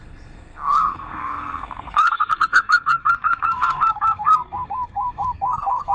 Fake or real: fake